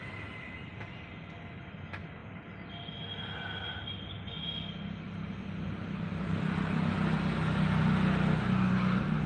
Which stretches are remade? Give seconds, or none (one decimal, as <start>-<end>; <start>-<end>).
none